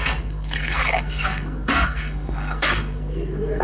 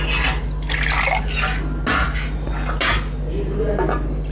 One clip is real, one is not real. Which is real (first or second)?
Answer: second